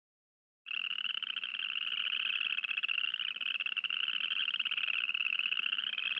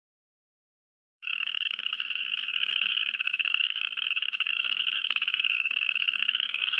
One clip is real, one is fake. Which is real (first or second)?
first